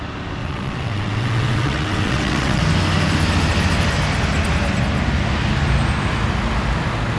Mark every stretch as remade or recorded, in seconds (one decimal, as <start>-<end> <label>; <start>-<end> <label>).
0.0-0.4 recorded; 0.4-2.6 remade; 2.6-7.2 recorded